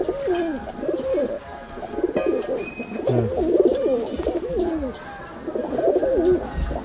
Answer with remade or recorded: recorded